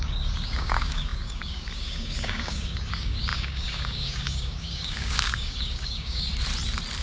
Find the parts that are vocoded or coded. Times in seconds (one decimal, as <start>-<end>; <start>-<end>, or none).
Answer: 0.0-6.3